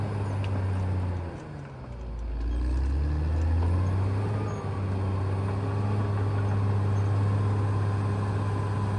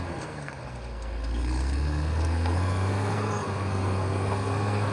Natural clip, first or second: first